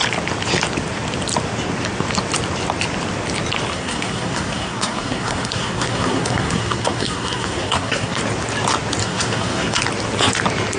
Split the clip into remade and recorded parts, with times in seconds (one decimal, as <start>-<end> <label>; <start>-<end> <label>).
0.0-3.7 recorded; 3.7-8.2 remade; 8.2-9.0 recorded; 9.0-9.8 remade; 9.8-10.8 recorded